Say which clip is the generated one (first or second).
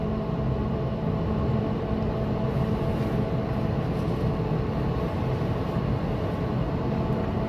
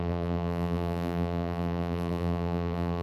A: second